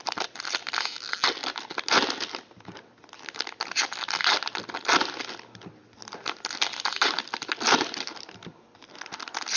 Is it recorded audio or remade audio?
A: recorded